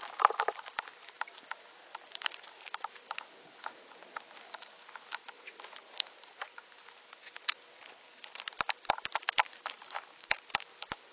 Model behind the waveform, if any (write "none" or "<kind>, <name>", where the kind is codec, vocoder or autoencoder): none